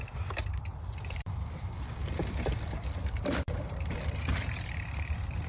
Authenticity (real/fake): fake